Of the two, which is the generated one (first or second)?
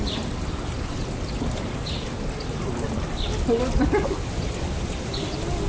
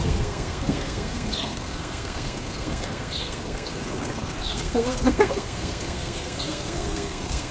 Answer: second